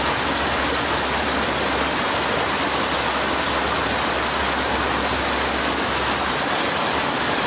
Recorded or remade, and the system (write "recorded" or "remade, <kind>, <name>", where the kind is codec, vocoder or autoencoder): recorded